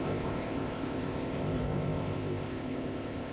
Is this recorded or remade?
remade